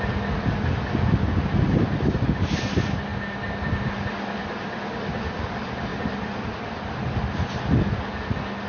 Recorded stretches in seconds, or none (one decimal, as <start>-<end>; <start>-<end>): 0.0-8.7